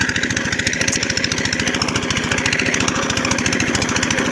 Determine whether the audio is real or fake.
real